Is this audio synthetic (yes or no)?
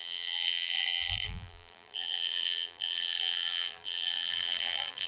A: yes